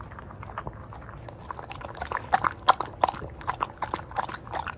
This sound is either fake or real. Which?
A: real